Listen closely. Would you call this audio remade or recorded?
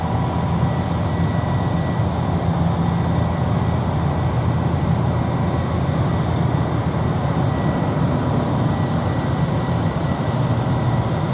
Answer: recorded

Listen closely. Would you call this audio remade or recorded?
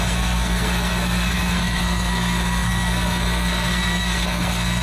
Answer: remade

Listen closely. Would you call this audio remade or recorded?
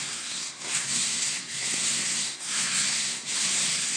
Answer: remade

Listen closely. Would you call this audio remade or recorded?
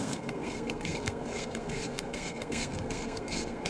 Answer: remade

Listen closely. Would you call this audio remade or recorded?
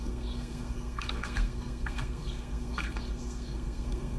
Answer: remade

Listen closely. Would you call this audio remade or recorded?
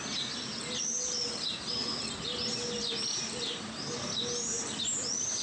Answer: recorded